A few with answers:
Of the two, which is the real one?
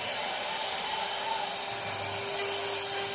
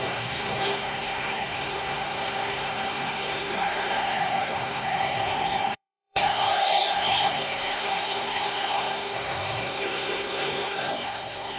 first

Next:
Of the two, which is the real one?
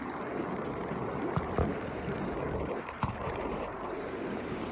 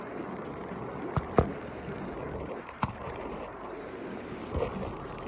second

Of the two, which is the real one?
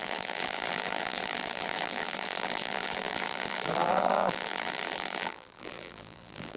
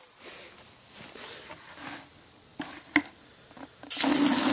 second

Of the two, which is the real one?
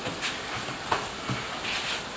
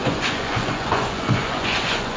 first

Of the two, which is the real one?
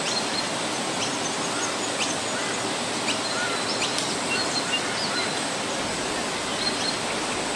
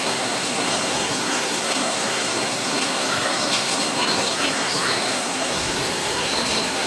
first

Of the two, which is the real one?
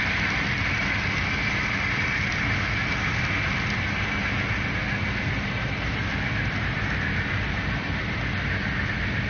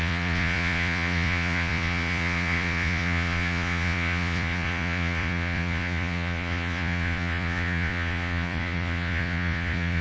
first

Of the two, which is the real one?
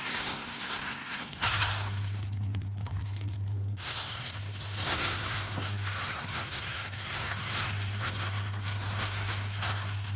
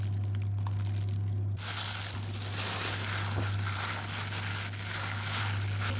second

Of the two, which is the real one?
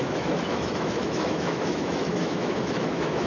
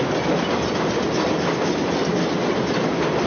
second